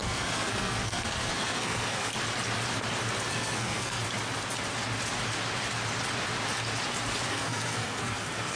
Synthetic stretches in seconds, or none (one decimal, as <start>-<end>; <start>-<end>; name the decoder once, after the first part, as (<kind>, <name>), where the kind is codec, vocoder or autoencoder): 0.0-2.1 (codec, SNAC); 3.3-4.0; 7.3-8.6

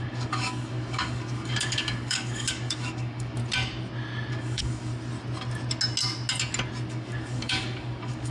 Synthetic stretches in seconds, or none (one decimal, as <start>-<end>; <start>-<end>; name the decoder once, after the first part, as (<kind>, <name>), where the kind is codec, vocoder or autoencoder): 0.0-3.4 (codec, DAC); 4.3-4.9; 6.9-8.3

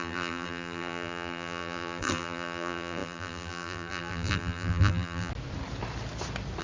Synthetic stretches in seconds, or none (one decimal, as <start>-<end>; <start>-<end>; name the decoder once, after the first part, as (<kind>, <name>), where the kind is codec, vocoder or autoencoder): 0.0-5.3 (vocoder, BigVGAN v2)

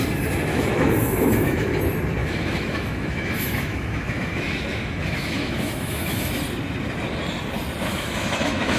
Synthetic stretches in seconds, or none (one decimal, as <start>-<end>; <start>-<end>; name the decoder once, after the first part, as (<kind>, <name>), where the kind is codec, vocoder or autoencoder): 0.5-1.8 (autoencoder, DAC-VAE); 2.2-6.3; 7.9-8.8